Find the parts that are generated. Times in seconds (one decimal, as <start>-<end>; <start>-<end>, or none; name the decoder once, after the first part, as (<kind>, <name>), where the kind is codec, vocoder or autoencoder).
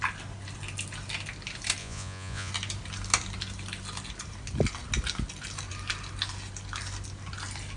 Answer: 1.8-2.5 (vocoder, Vocos)